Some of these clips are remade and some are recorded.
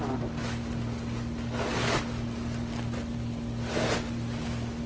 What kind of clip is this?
recorded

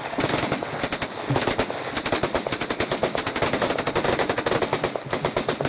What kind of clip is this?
recorded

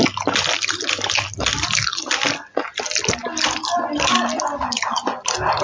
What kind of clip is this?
recorded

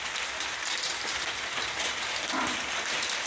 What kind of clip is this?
recorded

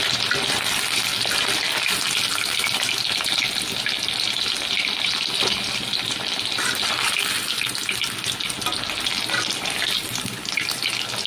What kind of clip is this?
recorded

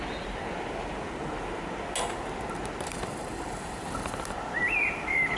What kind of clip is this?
recorded